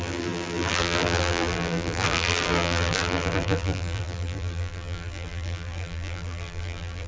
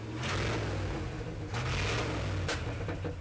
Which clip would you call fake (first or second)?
first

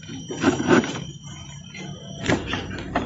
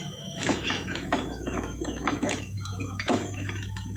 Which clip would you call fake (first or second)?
second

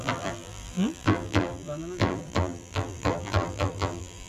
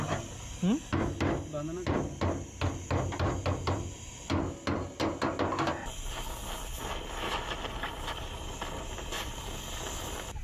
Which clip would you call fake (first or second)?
first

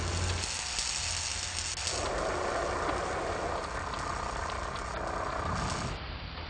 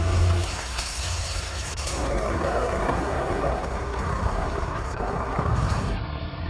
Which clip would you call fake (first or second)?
second